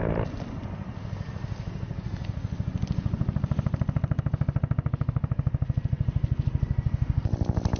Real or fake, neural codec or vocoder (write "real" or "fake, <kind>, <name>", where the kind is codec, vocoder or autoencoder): real